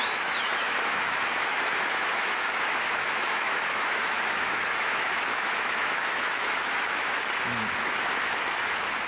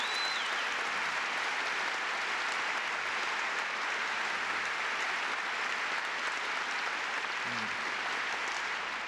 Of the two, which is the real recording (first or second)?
second